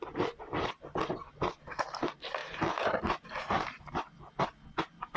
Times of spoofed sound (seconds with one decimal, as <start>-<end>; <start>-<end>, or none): none